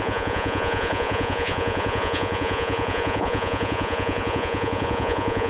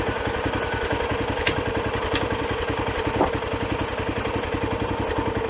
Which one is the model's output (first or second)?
first